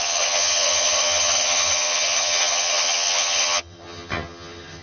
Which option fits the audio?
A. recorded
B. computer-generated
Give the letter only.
B